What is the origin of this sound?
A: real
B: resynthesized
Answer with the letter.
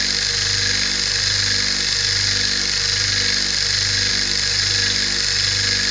A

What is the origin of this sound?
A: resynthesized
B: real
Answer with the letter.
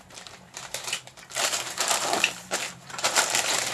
A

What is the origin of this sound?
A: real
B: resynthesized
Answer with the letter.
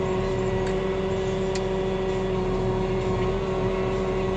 A